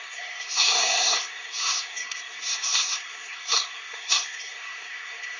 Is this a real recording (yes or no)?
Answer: no